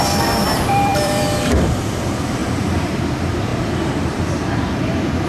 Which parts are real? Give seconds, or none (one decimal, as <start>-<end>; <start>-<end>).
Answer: none